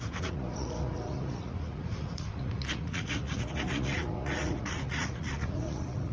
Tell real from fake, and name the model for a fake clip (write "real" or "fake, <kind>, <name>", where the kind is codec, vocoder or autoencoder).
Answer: fake, vocoder, Vocos